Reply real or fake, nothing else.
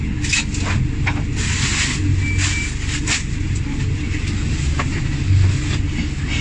real